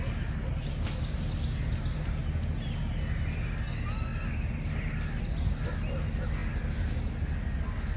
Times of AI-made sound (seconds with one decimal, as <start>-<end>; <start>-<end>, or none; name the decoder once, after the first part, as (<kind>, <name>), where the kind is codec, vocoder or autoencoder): none